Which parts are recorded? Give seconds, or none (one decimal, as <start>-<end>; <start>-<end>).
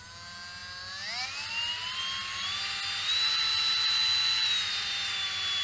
0.0-5.6